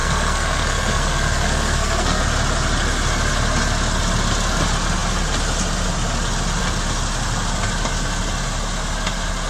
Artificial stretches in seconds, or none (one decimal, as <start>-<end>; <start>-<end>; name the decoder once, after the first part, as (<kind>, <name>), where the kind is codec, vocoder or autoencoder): 0.0-2.2 (codec, SNAC)